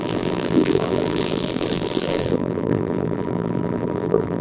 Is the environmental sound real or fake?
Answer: fake